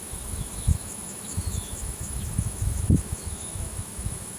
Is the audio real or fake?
fake